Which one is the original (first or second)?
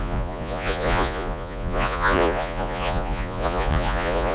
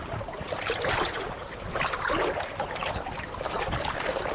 second